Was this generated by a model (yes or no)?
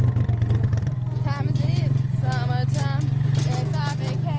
no